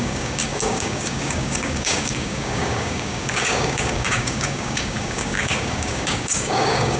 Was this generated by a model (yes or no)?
yes